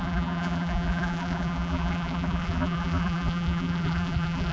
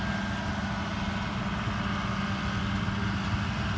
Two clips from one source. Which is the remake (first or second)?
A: first